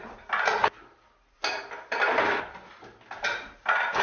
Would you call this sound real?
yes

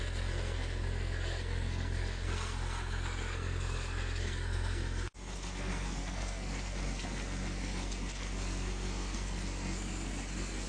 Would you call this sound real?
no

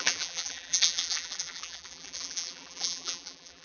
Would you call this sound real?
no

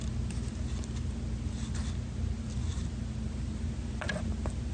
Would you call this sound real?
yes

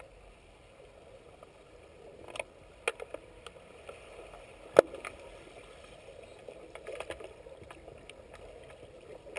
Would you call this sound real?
yes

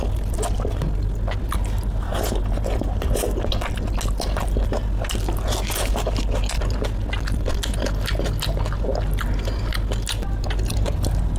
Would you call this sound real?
yes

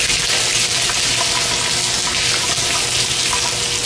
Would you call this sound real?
yes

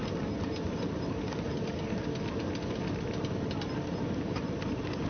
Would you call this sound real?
yes